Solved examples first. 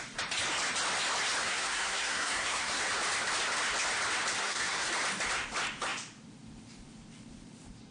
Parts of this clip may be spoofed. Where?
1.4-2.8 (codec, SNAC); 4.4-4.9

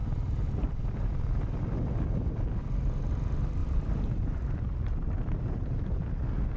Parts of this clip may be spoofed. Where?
3.6-6.1 (vocoder, BigVGAN v2)

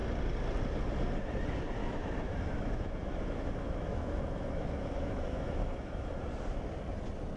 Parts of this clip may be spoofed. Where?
1.8-6.2 (autoencoder, DAC-VAE)

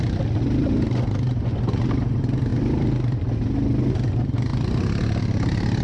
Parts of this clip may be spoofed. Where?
none

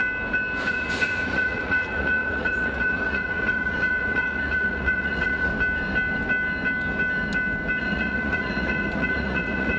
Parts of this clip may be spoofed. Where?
0.7-5.5 (vocoder, Vocos); 7.8-9.8

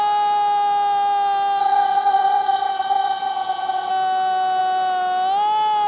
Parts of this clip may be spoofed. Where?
1.6-3.9 (vocoder, HiFi-GAN)

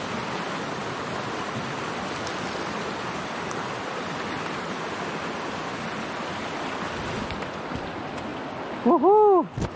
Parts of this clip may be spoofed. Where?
none